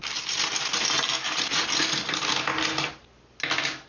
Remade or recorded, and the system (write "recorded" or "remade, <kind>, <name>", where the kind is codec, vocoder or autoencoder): recorded